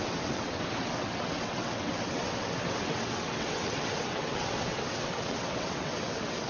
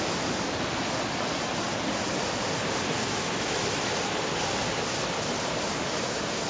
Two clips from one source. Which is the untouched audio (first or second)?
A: second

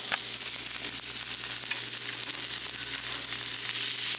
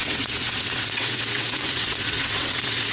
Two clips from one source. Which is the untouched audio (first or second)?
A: first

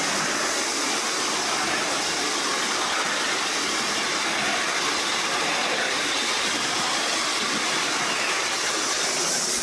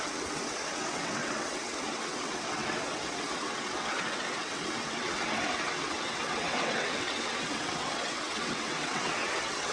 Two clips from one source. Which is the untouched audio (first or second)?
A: first